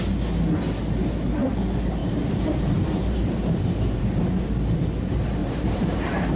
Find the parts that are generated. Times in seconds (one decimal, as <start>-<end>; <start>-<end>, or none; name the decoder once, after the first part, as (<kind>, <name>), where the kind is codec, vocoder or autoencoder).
2.0-4.0 (vocoder, BigVGAN v2); 5.4-6.4